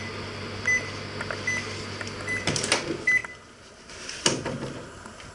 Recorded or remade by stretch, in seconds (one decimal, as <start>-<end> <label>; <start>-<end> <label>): 0.0-5.3 recorded